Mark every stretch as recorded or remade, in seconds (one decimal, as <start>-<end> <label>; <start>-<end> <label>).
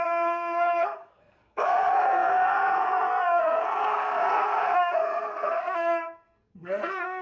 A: 0.0-7.2 remade